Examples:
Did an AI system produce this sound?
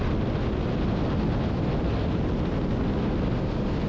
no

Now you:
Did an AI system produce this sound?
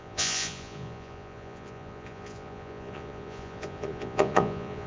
yes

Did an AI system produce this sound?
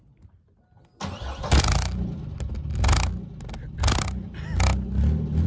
no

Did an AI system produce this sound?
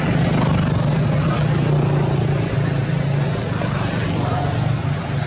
no